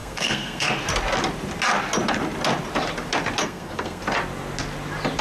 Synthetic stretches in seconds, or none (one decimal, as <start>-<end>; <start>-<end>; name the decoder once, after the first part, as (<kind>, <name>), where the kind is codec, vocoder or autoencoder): 0.0-0.7 (codec, SNAC); 3.4-4.0